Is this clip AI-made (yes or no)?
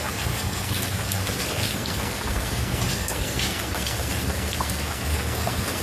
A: yes